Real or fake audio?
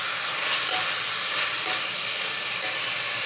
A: real